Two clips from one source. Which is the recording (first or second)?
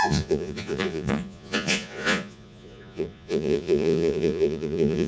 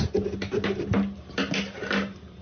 second